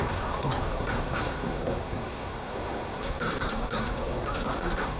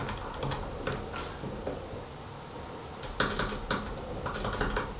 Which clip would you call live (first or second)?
second